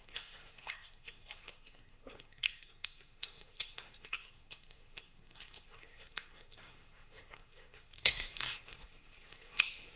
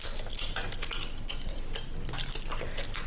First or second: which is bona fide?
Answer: second